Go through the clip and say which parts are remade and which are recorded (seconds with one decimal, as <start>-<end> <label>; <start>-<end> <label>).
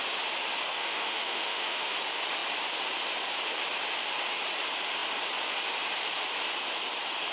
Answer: 0.0-0.7 recorded; 0.7-2.0 remade; 2.0-7.3 recorded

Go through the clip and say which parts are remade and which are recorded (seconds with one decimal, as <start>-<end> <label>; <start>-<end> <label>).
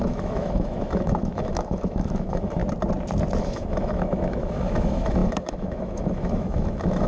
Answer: 0.0-2.6 remade; 2.6-3.4 recorded; 3.4-7.1 remade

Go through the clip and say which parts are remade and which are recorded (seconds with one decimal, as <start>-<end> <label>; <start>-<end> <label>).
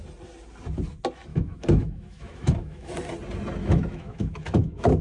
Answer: 0.0-1.3 recorded; 1.3-2.9 remade; 2.9-3.6 recorded; 3.6-5.0 remade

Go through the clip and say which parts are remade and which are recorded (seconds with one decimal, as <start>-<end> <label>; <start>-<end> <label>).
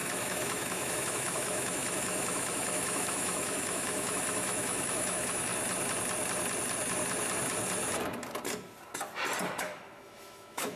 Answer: 0.0-5.5 remade; 5.5-9.6 recorded; 9.6-10.8 remade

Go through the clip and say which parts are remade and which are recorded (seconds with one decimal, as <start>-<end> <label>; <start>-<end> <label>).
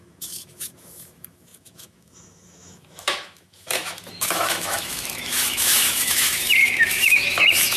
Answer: 0.0-7.8 remade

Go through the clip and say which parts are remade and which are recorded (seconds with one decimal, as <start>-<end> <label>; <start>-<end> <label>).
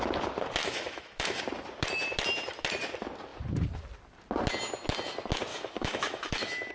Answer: 0.0-0.6 recorded; 0.6-1.4 remade; 1.4-5.5 recorded; 5.5-6.7 remade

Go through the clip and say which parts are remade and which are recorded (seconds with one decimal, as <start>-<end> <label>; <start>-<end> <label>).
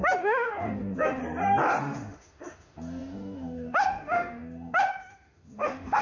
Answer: 0.0-1.2 remade; 1.2-1.8 recorded; 1.8-6.0 remade